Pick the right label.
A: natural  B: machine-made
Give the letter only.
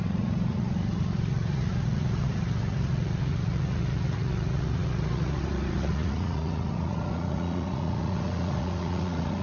B